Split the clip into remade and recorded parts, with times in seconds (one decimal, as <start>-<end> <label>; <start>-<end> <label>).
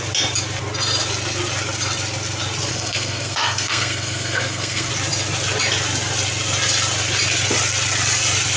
0.0-2.7 recorded; 2.7-4.9 remade; 4.9-8.6 recorded